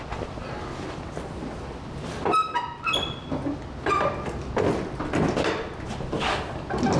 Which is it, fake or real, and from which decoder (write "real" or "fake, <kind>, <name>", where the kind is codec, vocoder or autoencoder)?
real